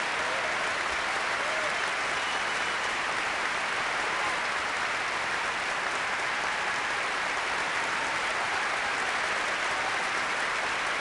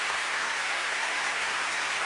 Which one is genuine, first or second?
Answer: first